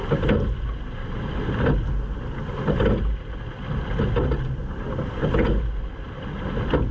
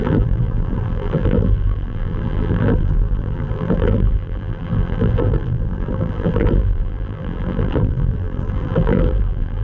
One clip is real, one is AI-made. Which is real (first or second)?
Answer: first